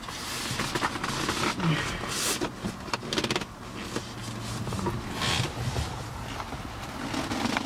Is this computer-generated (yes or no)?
no